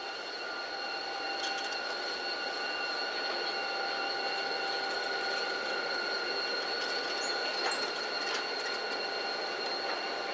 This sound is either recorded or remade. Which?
recorded